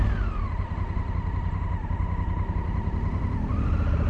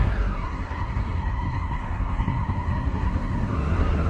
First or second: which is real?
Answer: first